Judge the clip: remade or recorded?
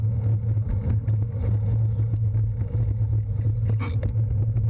recorded